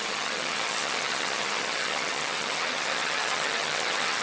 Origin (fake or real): fake